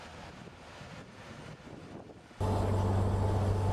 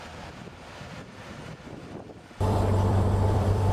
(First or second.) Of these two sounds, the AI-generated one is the second